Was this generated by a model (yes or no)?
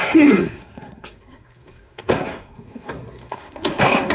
yes